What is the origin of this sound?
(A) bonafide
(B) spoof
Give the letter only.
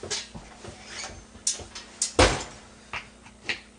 A